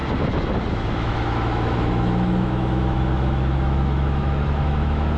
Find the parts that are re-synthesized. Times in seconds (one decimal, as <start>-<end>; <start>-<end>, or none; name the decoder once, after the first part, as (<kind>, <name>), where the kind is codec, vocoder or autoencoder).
0.7-5.2 (autoencoder, DAC-VAE)